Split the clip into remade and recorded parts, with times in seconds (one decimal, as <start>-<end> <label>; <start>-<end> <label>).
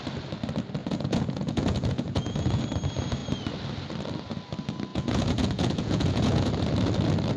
0.0-0.8 recorded; 0.8-2.6 remade; 2.6-4.9 recorded; 4.9-6.5 remade; 6.5-7.4 recorded